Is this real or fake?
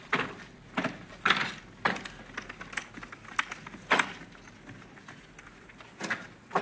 real